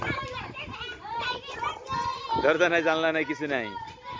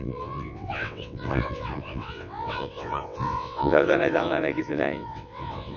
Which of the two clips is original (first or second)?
first